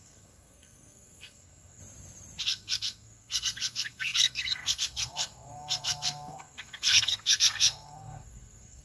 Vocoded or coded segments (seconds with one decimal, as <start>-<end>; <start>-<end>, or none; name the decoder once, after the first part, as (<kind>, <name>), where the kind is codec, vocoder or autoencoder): 0.0-1.8 (codec, SNAC); 2.4-8.8